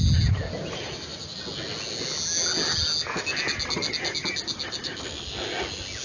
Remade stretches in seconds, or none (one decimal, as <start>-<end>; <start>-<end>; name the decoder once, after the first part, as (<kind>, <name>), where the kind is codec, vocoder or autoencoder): none